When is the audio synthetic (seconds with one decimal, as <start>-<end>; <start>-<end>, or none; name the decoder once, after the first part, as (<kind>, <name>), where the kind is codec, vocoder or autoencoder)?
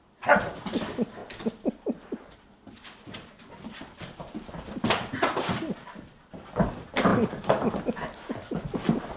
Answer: 0.0-1.2 (vocoder, BigVGAN v2); 1.7-7.1